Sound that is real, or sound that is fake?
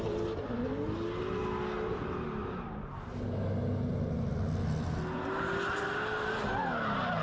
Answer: real